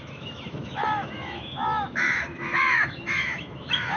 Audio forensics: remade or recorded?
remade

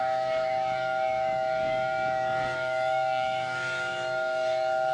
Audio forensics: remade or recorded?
remade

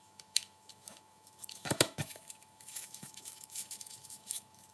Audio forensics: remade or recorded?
remade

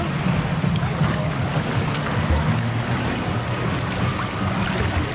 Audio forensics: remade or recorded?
recorded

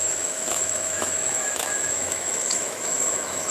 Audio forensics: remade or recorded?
remade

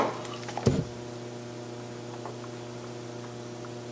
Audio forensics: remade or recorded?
recorded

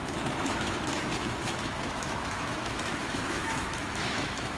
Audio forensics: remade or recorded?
remade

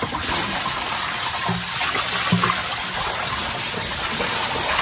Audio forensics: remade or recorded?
recorded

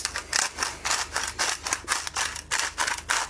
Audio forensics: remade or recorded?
recorded